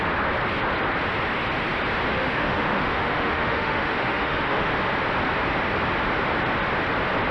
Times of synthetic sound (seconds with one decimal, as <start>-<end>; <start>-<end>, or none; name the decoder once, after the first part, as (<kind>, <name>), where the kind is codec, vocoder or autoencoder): 2.1-4.7 (autoencoder, DAC-VAE)